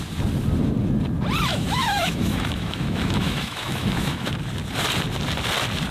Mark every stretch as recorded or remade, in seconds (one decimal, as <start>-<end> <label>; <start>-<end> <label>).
0.0-1.5 recorded; 1.5-4.3 remade; 4.3-5.9 recorded